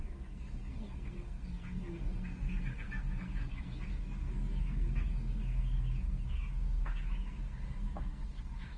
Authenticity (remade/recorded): remade